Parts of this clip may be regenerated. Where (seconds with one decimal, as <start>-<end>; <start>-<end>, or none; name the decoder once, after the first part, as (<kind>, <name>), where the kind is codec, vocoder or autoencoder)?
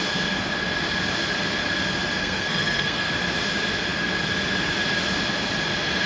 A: 2.2-3.1 (codec, SNAC)